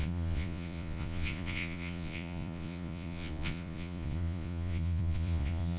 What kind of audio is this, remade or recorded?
remade